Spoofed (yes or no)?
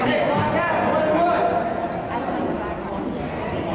no